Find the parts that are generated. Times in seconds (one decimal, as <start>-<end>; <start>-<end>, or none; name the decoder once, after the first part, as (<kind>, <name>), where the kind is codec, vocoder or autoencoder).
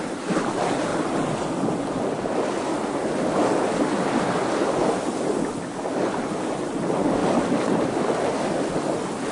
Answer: none